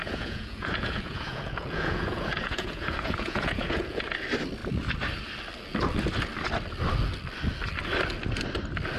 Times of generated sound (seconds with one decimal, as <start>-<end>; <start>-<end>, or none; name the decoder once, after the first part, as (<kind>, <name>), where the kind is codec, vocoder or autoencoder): 0.0-4.0 (vocoder, Vocos)